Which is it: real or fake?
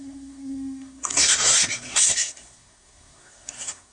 fake